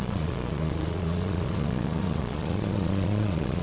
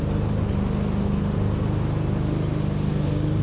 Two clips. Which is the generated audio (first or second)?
first